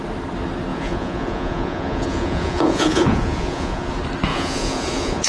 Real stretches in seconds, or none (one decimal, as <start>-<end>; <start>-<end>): 0.0-0.7; 3.9-4.3